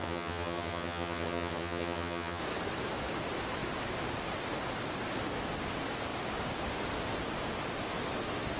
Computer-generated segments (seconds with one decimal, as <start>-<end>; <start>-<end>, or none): 0.0-2.4